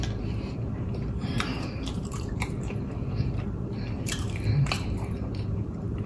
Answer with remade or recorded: remade